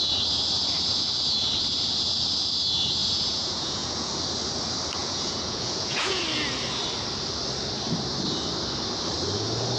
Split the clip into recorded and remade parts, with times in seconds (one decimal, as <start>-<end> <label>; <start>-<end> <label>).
0.0-3.0 recorded; 3.0-4.1 remade; 4.1-5.0 recorded; 5.0-6.2 remade; 6.2-9.8 recorded